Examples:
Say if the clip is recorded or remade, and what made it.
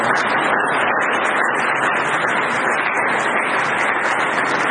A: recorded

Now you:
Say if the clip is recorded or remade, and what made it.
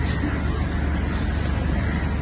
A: recorded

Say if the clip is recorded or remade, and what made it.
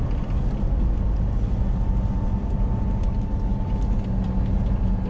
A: recorded